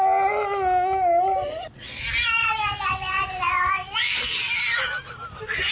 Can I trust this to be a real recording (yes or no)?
yes